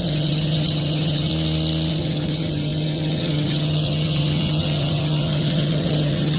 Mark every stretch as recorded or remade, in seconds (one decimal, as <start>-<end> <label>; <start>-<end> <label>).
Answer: 0.0-1.3 remade; 1.3-1.9 recorded; 1.9-6.4 remade